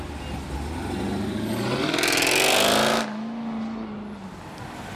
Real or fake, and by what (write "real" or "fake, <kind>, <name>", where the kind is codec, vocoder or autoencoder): real